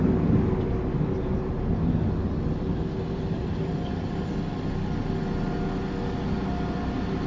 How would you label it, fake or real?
real